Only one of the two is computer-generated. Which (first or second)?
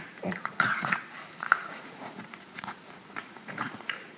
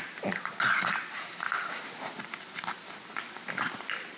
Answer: first